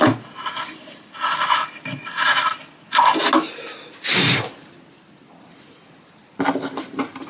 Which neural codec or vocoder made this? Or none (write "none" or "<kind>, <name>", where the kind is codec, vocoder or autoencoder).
none